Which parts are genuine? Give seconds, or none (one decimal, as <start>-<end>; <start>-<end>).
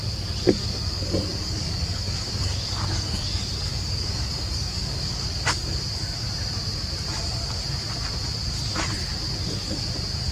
0.0-0.6; 5.8-10.3